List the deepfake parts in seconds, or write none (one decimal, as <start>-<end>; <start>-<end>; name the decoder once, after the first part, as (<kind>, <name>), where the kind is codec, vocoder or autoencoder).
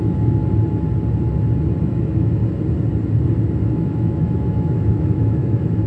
0.0-0.4 (autoencoder, DAC-VAE); 1.8-2.4; 3.7-5.9